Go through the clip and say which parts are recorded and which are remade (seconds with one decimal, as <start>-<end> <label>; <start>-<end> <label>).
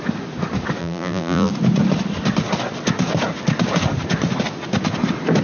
0.0-0.8 recorded; 0.8-1.5 remade; 1.5-5.4 recorded